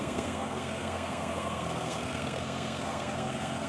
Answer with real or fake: fake